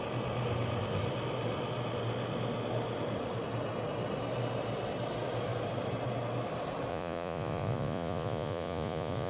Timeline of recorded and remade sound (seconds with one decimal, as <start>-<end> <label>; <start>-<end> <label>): 0.0-6.9 recorded; 6.9-9.3 remade